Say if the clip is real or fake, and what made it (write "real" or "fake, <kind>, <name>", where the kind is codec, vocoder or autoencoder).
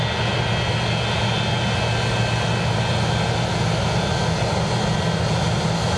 real